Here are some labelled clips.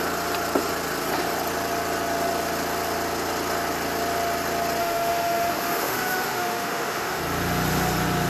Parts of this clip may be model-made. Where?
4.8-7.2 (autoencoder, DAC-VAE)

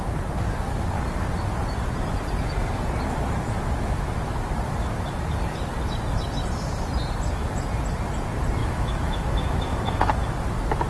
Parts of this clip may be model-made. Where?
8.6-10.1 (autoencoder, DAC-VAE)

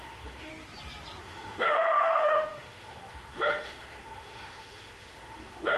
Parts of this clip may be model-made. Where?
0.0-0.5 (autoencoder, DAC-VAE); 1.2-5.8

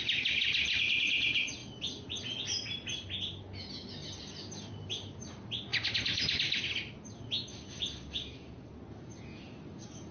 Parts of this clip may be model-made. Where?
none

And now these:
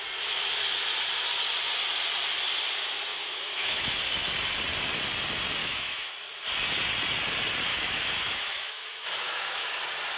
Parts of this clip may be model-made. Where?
3.1-3.9 (autoencoder, DAC-VAE); 5.6-6.1; 7.7-9.7

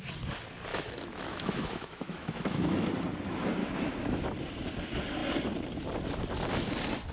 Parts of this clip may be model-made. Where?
0.7-2.9 (autoencoder, DAC-VAE); 3.6-4.2

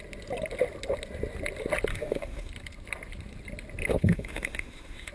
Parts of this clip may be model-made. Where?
1.9-2.5 (autoencoder, DAC-VAE); 3.9-5.1

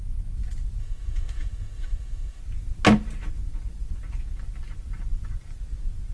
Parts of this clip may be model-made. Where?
0.8-2.4 (autoencoder, DAC-VAE)